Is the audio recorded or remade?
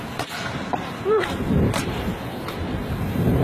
remade